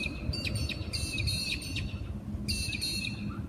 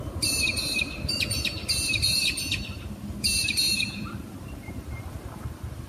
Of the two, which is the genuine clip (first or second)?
first